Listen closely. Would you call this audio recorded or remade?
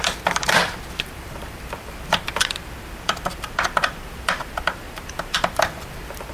remade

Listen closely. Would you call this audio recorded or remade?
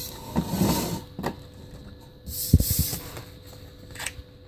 recorded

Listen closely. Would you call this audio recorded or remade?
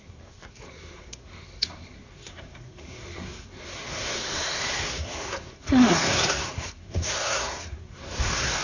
remade